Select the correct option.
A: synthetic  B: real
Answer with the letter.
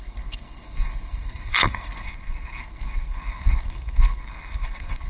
A